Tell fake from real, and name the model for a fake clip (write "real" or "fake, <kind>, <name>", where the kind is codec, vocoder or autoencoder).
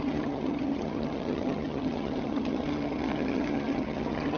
fake, vocoder, HiFi-GAN